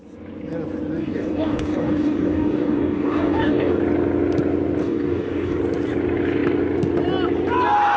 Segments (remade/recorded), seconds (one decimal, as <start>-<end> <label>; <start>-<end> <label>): 0.0-1.0 recorded; 1.0-3.8 remade; 3.8-4.8 recorded; 4.8-5.6 remade; 5.6-8.0 recorded